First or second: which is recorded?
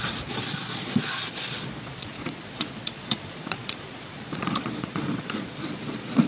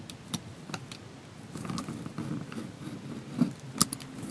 second